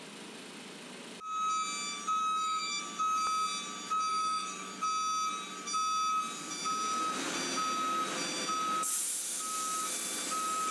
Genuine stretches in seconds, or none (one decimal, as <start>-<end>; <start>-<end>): 0.0-2.2; 2.8-4.1; 4.7-10.7